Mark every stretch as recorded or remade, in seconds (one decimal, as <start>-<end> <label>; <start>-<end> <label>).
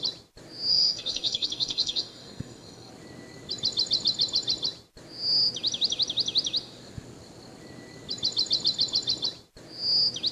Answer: 0.0-0.7 recorded; 0.7-2.9 remade; 2.9-10.3 recorded